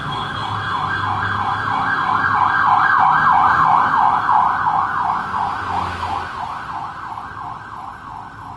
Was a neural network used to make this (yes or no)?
no